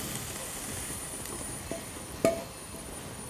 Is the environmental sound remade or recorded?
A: recorded